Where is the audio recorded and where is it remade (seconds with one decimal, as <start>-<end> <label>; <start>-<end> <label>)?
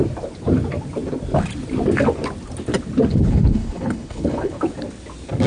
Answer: 0.0-3.1 recorded; 3.1-4.6 remade; 4.6-5.5 recorded